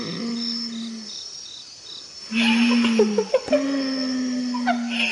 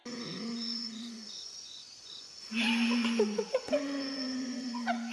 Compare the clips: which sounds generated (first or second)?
second